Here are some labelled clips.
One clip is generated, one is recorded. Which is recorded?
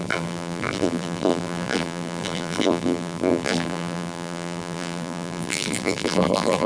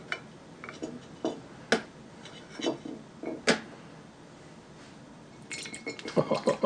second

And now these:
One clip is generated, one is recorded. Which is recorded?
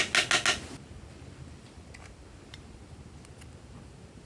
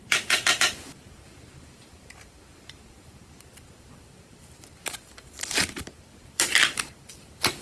first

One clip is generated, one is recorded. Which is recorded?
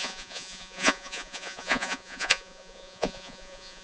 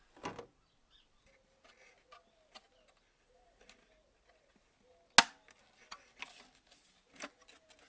second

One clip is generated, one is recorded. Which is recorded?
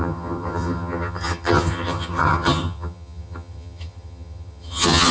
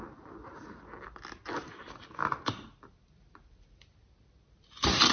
second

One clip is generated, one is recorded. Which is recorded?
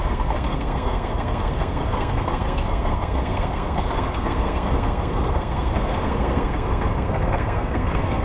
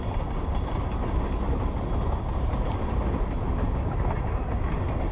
second